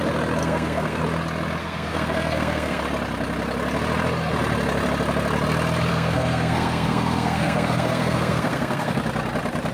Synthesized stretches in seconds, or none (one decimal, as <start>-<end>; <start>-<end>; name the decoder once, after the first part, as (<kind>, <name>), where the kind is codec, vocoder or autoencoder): 0.4-1.0 (codec, SNAC); 1.6-2.8; 5.9-9.0